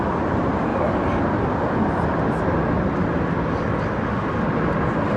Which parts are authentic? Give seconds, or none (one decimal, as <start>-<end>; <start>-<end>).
0.0-5.2